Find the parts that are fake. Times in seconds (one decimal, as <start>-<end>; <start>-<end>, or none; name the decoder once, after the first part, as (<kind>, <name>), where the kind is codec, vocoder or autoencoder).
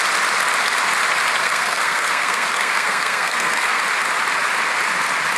1.4-3.8 (codec, SNAC)